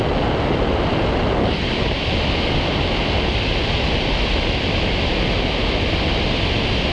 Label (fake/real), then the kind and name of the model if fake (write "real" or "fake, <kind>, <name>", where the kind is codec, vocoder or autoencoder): real